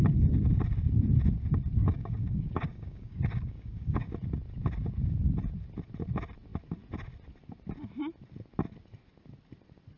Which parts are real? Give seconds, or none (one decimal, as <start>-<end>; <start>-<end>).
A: 0.0-1.8; 4.1-10.0